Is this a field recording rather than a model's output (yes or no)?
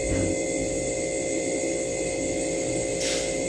yes